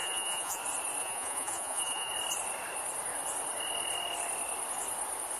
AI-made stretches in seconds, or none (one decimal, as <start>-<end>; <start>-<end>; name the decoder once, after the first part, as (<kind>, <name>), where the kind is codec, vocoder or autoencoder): 0.0-0.6 (vocoder, Vocos); 1.0-2.1